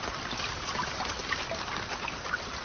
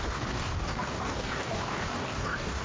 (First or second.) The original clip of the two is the first